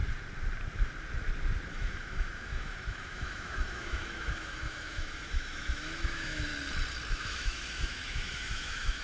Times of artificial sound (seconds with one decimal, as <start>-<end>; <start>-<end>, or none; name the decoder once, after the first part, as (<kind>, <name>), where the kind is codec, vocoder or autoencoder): 1.7-6.5 (autoencoder, DAC-VAE); 7.1-9.0